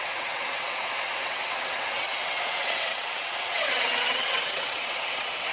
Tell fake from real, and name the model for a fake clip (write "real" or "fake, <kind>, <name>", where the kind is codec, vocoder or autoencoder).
fake, vocoder, WaveNeXt